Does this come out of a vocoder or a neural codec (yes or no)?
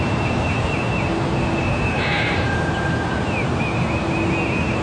no